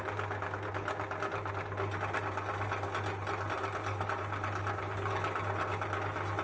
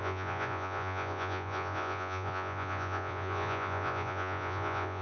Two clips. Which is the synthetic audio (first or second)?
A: second